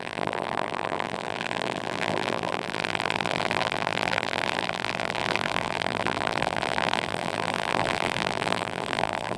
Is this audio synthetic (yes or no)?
yes